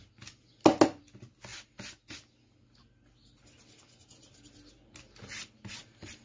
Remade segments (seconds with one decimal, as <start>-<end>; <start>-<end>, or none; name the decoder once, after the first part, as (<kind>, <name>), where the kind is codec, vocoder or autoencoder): none